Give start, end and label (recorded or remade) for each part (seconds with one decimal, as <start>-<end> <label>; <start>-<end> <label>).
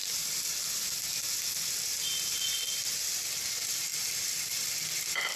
0.0-3.9 recorded; 3.9-5.4 remade